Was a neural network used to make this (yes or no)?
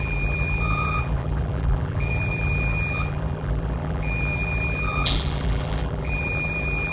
yes